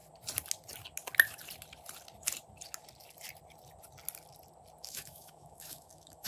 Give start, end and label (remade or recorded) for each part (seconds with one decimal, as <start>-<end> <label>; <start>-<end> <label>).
0.0-4.8 recorded; 4.8-6.3 remade